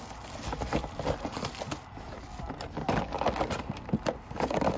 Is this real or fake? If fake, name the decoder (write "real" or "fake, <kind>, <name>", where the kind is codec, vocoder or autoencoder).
real